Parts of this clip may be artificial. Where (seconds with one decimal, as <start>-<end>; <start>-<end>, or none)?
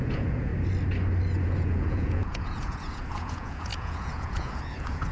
0.0-0.5; 1.4-5.1